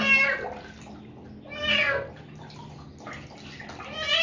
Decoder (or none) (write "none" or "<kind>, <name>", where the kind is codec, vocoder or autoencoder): none